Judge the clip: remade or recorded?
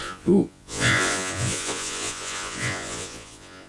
remade